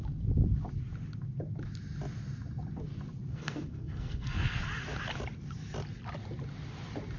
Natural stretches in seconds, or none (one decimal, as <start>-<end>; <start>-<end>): 0.0-3.3; 4.6-7.2